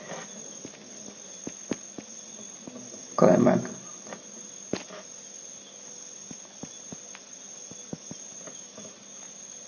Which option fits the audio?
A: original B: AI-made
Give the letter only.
A